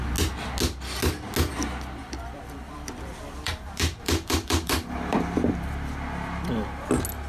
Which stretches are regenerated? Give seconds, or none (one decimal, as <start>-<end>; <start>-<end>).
2.0-5.9